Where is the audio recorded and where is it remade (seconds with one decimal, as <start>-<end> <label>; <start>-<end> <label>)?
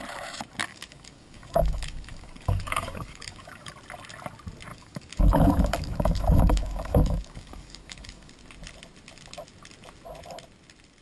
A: 0.0-0.7 recorded; 0.7-3.7 remade; 3.7-4.7 recorded; 4.7-8.3 remade; 8.3-11.0 recorded